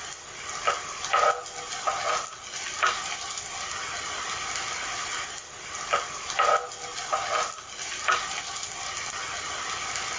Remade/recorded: recorded